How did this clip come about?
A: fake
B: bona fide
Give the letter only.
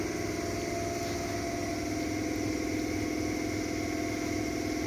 B